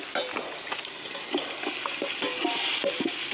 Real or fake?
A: real